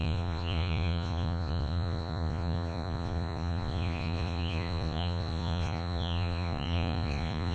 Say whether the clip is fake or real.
fake